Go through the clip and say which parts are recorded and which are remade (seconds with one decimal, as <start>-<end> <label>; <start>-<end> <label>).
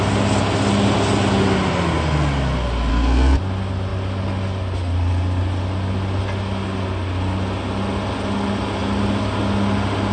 0.0-2.9 recorded; 2.9-3.4 remade; 3.4-10.1 recorded